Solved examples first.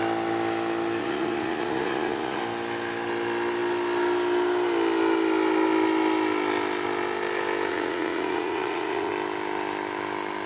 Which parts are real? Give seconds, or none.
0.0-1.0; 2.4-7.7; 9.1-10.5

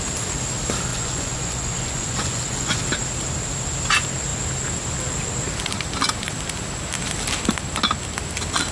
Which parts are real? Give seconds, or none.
0.0-0.9; 2.8-8.7